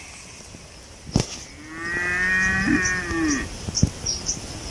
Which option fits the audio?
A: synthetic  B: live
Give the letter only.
B